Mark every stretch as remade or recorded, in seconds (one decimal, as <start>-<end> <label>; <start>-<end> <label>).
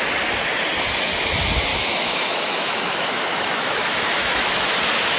0.0-1.7 recorded; 1.7-4.8 remade; 4.8-5.2 recorded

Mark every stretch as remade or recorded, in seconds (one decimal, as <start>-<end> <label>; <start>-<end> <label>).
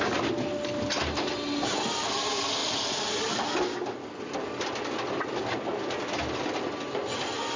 0.0-7.6 recorded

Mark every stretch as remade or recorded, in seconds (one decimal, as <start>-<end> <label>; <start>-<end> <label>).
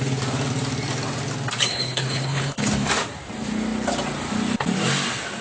0.0-1.7 recorded; 1.7-2.9 remade; 2.9-5.4 recorded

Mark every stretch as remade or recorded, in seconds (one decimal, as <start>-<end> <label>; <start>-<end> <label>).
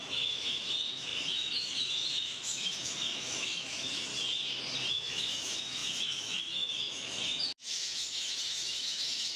0.0-4.1 remade; 4.1-4.9 recorded; 4.9-9.4 remade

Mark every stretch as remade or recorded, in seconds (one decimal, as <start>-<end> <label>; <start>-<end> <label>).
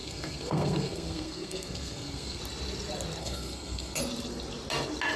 0.0-2.4 remade; 2.4-3.2 recorded; 3.2-4.0 remade; 4.0-5.2 recorded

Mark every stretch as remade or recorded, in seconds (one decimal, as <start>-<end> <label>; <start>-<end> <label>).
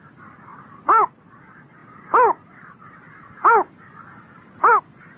0.0-5.2 recorded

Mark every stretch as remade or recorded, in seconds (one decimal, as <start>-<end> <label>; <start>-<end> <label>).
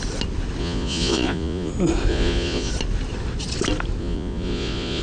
0.0-0.6 recorded; 0.6-1.7 remade; 1.7-2.1 recorded; 2.1-2.7 remade; 2.7-4.0 recorded; 4.0-5.0 remade